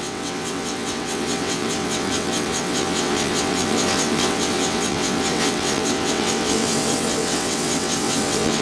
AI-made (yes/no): yes